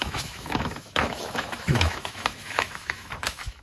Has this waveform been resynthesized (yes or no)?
yes